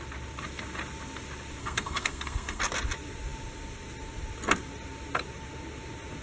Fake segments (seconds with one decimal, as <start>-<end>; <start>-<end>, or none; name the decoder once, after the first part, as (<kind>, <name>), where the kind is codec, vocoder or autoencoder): 1.6-2.6 (codec, SNAC)